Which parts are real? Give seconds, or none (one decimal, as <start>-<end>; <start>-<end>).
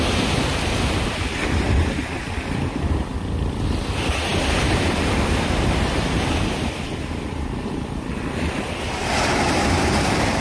0.0-4.3; 9.1-10.4